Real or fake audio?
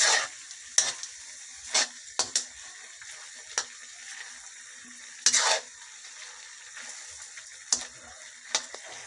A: real